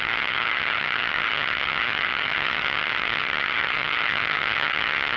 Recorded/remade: remade